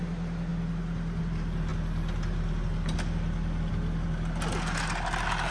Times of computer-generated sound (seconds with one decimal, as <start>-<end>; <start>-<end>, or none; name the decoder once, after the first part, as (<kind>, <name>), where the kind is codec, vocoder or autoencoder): none